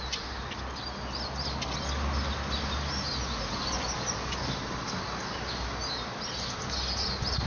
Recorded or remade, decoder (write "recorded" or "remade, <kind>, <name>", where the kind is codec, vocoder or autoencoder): recorded